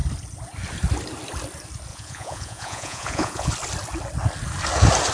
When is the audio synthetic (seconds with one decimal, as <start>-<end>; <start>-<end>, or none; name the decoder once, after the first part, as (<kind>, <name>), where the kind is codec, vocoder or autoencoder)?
1.9-3.5 (vocoder, Vocos)